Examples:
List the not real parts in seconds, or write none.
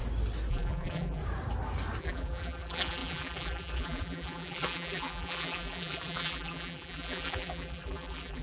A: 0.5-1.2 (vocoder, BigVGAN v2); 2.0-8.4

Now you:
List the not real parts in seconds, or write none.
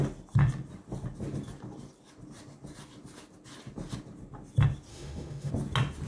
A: 4.9-5.5 (autoencoder, DAC-VAE)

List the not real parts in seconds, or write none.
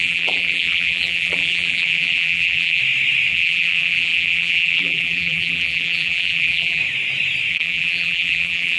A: 0.0-2.8 (vocoder, BigVGAN v2); 3.3-6.8; 7.5-8.8